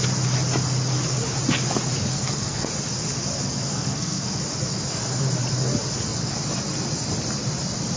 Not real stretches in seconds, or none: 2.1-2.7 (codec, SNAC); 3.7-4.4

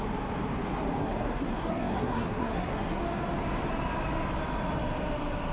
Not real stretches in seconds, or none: 1.0-3.0 (codec, SNAC)

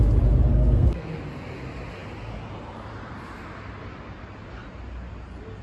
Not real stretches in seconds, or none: 0.5-1.1 (codec, SNAC)

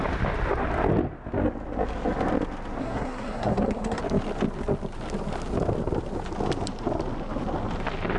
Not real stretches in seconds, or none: 2.8-4.0 (codec, SNAC)

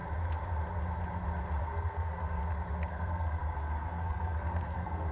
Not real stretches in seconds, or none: 1.6-2.4 (codec, SNAC); 2.9-5.1